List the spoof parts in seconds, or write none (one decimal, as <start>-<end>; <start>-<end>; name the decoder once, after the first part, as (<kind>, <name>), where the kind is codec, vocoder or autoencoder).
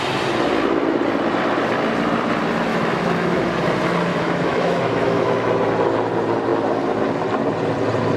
2.7-3.4 (autoencoder, DAC-VAE); 4.1-5.3